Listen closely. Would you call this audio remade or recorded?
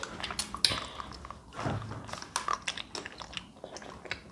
recorded